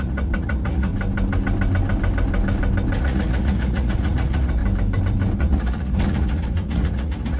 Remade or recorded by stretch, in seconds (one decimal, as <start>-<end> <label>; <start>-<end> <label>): 0.0-0.9 remade; 0.9-3.0 recorded; 3.0-4.6 remade; 4.6-5.4 recorded; 5.4-7.4 remade